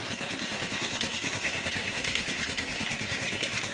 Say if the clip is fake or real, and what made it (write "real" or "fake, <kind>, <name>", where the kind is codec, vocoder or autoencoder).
fake, codec, SNAC